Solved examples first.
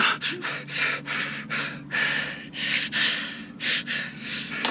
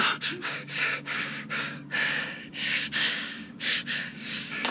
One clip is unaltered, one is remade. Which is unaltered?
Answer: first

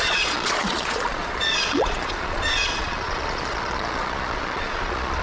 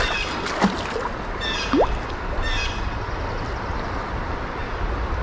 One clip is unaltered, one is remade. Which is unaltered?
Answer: second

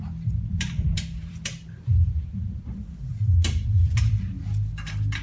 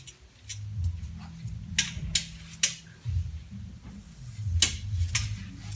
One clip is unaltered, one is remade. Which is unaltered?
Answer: second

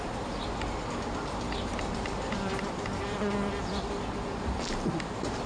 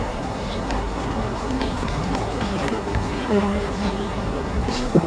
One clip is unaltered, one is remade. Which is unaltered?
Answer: first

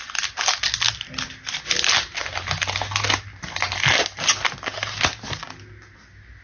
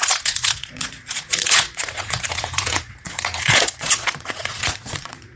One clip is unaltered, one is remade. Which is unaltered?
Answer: first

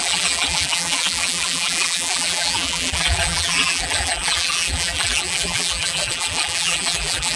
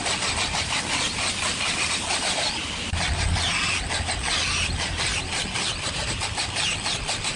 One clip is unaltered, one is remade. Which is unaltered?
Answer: second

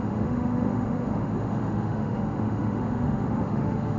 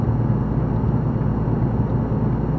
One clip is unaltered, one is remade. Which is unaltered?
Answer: second